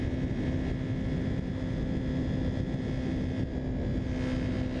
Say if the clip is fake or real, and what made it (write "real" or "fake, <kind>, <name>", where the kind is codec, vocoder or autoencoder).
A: real